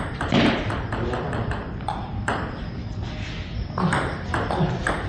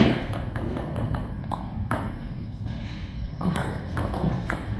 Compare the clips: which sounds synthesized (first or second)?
second